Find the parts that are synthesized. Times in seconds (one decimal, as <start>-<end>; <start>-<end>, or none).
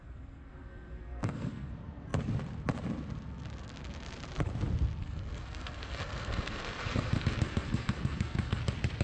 0.0-1.7; 5.0-8.6